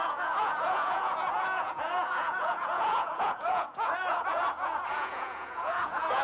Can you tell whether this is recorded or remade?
remade